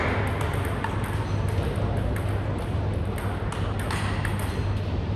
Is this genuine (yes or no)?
yes